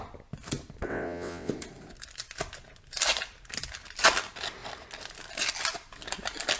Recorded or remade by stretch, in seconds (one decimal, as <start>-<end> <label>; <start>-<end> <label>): 0.0-0.9 recorded; 0.9-1.5 remade; 1.5-6.6 recorded